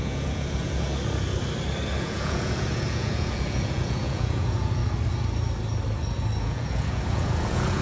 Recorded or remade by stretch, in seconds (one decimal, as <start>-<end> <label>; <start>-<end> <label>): 0.0-0.9 remade; 0.9-2.0 recorded; 2.0-4.8 remade; 4.8-6.4 recorded; 6.4-7.8 remade